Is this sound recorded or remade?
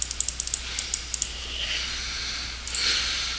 recorded